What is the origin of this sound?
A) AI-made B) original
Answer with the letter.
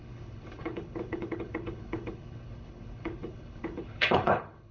A